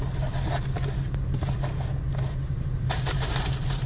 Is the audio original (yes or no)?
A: yes